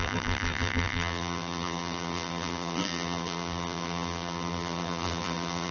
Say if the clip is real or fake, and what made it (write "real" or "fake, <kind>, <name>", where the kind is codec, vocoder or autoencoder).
fake, vocoder, BigVGAN v2